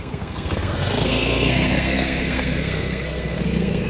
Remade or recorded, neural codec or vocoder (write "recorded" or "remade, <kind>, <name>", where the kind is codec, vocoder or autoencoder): remade, codec, SNAC